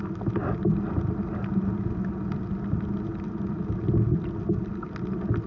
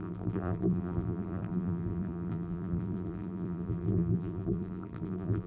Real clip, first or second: first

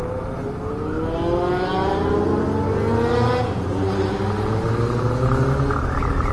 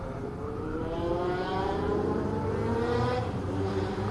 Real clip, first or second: first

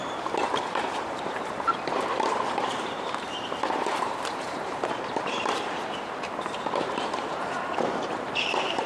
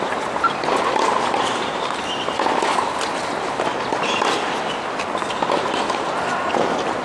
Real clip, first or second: second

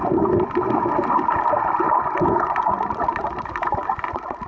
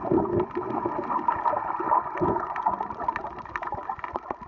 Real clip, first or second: second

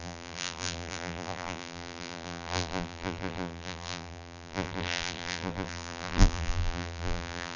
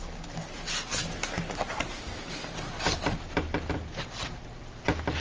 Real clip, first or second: second